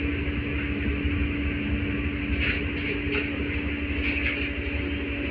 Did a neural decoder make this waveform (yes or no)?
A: no